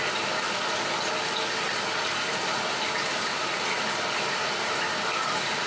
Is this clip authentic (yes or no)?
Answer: yes